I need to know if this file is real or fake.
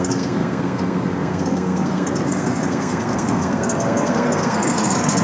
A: fake